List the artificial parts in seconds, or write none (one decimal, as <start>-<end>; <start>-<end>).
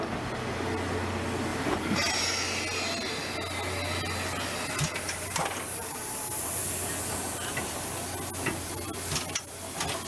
1.5-2.1; 4.9-6.9